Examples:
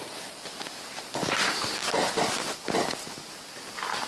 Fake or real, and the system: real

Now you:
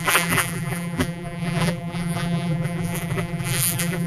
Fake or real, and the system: fake, vocoder, BigVGAN v2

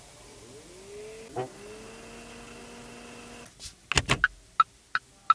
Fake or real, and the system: real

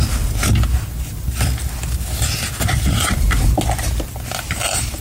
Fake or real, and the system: real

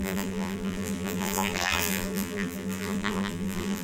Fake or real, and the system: fake, vocoder, BigVGAN v2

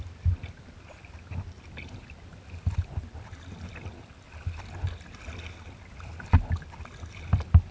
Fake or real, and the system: real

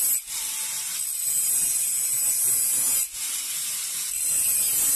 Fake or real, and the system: real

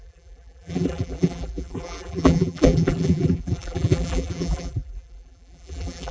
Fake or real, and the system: fake, vocoder, BigVGAN v2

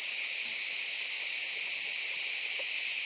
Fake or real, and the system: real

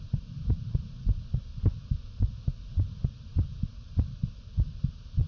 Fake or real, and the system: fake, vocoder, BigVGAN v2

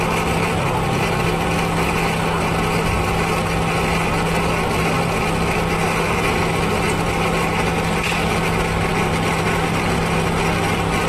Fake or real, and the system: real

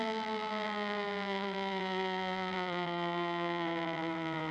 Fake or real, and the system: fake, vocoder, BigVGAN v2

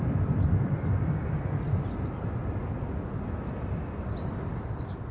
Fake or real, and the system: real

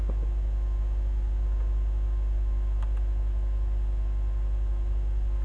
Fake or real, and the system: real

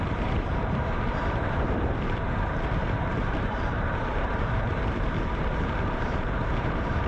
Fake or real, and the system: fake, vocoder, BigVGAN v2